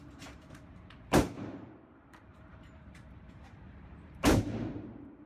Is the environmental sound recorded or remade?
remade